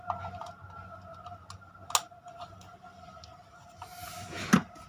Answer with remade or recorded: recorded